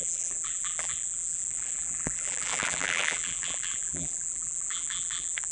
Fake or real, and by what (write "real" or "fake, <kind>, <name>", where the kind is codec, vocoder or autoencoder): fake, vocoder, BigVGAN v2